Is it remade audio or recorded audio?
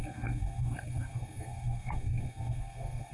remade